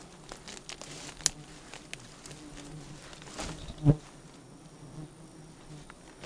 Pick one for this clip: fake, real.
real